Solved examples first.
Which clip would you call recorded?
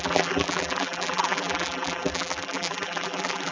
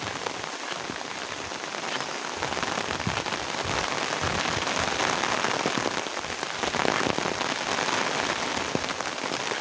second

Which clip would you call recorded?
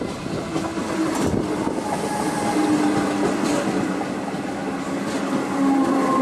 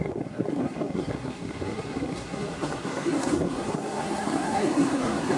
first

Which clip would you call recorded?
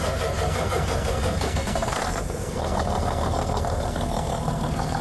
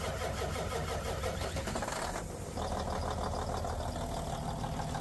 second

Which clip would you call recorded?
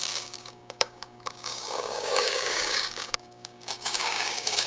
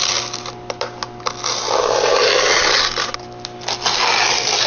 second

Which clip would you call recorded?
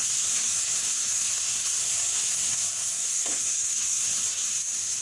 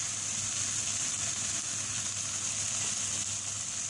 second